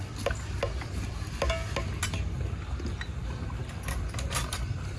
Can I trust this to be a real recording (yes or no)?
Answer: yes